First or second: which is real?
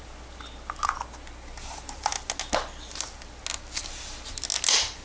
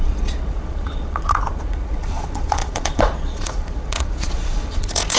first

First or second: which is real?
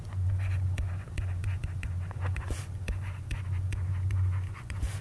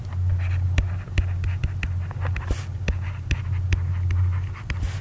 second